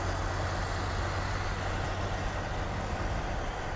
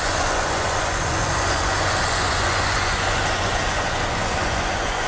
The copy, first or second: second